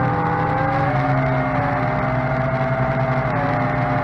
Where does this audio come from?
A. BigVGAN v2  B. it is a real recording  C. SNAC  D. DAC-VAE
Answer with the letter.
B